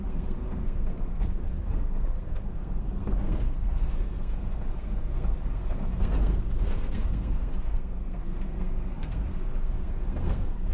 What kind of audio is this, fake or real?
fake